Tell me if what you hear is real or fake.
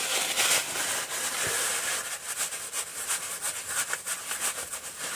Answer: real